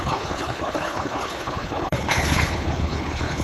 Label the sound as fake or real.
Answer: fake